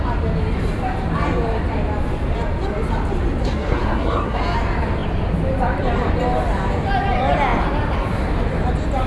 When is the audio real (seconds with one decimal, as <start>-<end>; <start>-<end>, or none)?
0.0-3.4; 4.4-9.1